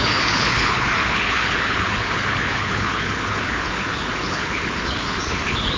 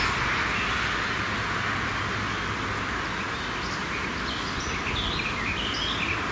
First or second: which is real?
second